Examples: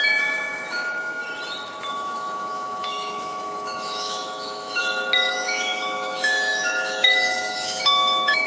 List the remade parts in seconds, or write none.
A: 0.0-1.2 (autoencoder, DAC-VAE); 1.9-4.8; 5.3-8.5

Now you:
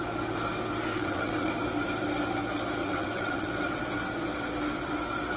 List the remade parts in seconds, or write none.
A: 0.9-1.5 (vocoder, WaveNeXt); 2.8-3.5

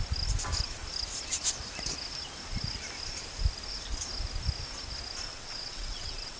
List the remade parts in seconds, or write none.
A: 5.3-6.4 (vocoder, WaveNeXt)

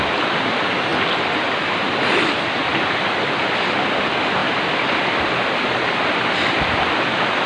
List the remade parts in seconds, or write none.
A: none

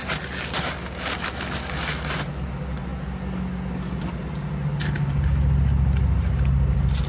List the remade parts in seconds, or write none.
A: none

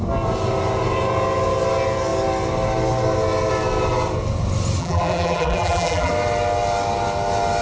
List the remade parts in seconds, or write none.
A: 4.8-6.1 (vocoder, BigVGAN v2)